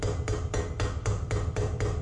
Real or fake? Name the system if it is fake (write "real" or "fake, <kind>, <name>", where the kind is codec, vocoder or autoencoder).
real